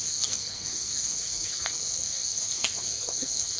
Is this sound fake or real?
fake